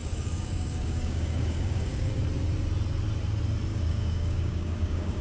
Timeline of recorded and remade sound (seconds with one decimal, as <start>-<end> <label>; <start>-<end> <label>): 0.0-2.1 remade; 2.1-3.7 recorded; 3.7-5.2 remade